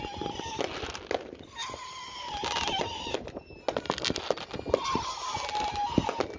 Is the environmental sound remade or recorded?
recorded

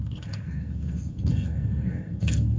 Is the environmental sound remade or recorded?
remade